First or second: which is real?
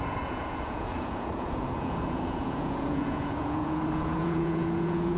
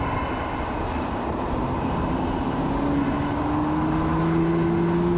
second